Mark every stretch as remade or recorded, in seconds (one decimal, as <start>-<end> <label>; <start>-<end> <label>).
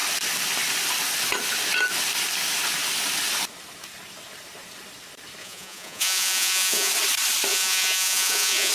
0.0-5.4 recorded; 5.4-6.9 remade; 6.9-7.5 recorded; 7.5-8.7 remade